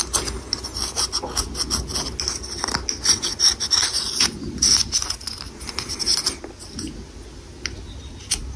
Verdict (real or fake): real